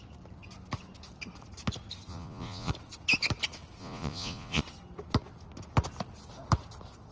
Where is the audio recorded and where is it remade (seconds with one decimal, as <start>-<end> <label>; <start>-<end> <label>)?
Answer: 0.0-2.1 recorded; 2.1-2.7 remade; 2.7-3.8 recorded; 3.8-4.6 remade; 4.6-7.1 recorded